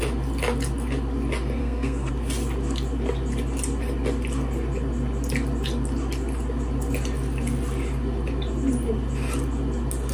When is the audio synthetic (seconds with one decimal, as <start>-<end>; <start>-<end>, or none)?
1.6-2.1